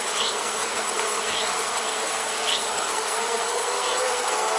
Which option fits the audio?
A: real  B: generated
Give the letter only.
B